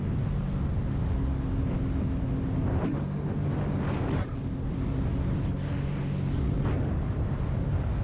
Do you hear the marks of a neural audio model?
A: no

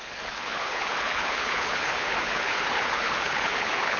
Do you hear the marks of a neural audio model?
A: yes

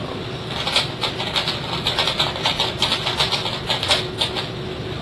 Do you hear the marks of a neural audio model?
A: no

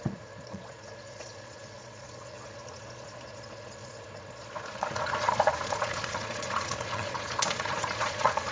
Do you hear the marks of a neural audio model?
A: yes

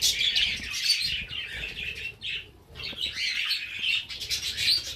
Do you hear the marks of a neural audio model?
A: no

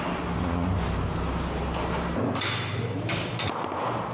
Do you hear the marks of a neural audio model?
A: no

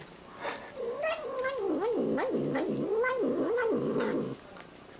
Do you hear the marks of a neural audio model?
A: no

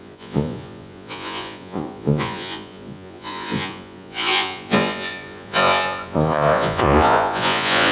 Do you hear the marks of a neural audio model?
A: yes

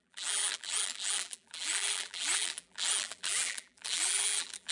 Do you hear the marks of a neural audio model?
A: yes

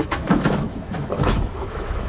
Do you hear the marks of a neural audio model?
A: yes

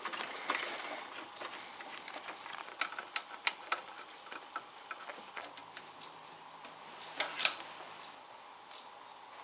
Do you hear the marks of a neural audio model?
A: no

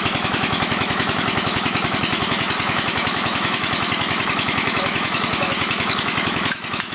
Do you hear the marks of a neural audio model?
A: yes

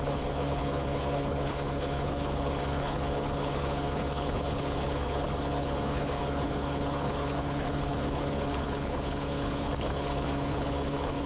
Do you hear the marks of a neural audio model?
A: yes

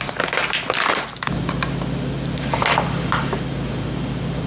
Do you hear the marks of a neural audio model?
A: no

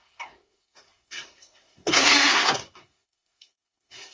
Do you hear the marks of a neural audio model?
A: yes